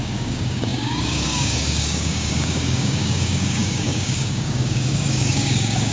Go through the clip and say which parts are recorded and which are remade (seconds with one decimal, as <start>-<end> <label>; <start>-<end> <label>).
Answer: 0.0-5.9 remade

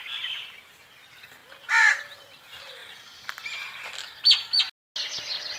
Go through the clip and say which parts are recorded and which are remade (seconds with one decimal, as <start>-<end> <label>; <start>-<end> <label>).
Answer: 0.0-5.6 recorded

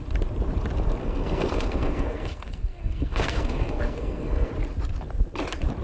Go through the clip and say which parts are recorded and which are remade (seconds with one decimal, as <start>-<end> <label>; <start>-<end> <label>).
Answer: 0.0-1.0 recorded; 1.0-4.5 remade; 4.5-5.8 recorded

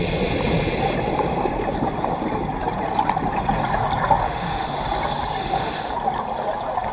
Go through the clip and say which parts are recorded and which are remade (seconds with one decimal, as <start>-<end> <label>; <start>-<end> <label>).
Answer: 0.0-4.2 recorded; 4.2-4.7 remade; 4.7-5.4 recorded; 5.4-5.9 remade; 5.9-6.9 recorded

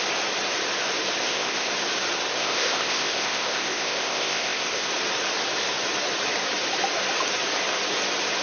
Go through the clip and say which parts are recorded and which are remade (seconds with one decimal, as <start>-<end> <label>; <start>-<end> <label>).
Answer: 0.0-1.2 recorded; 1.2-1.7 remade; 1.7-2.4 recorded; 2.4-4.9 remade; 4.9-8.4 recorded

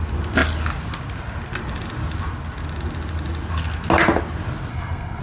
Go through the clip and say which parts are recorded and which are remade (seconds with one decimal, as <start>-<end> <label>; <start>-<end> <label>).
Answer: 0.0-4.7 recorded; 4.7-5.2 remade

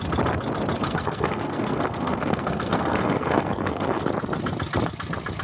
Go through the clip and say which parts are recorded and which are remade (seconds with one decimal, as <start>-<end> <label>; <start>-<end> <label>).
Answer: 0.0-0.8 recorded; 0.8-4.0 remade; 4.0-5.4 recorded

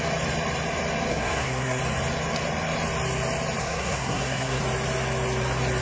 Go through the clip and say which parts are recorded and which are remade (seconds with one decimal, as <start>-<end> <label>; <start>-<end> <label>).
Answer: 0.0-1.1 recorded; 1.1-1.8 remade; 1.8-3.6 recorded; 3.6-4.6 remade; 4.6-5.8 recorded